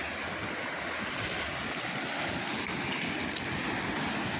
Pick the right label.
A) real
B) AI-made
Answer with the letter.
A